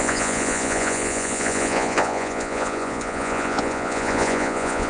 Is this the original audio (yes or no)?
no